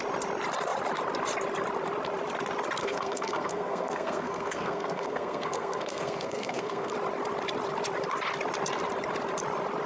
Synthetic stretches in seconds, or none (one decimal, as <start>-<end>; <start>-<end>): 2.8-6.9